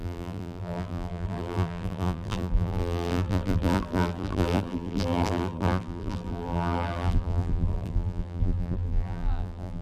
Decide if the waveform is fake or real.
fake